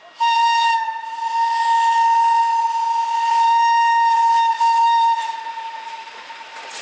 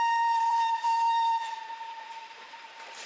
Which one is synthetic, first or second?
second